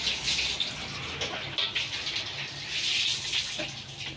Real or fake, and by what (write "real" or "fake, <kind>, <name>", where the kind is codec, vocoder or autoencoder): real